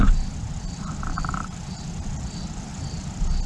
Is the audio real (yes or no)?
yes